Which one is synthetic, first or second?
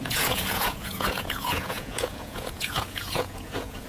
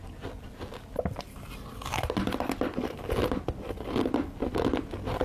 first